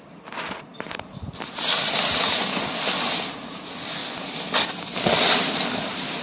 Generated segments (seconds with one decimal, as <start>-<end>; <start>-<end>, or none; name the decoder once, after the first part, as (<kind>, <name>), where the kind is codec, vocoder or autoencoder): none